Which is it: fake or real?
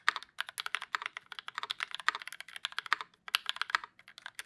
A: real